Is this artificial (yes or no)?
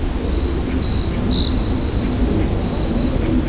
no